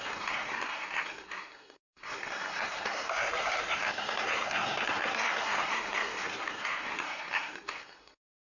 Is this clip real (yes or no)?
no